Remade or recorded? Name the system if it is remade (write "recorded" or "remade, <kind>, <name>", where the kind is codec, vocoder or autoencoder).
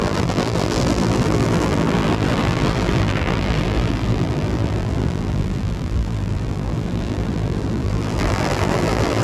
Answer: remade, vocoder, BigVGAN v2